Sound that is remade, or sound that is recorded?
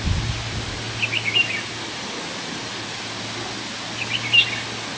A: recorded